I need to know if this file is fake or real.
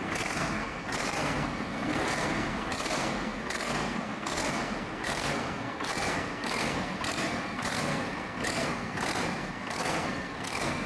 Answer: fake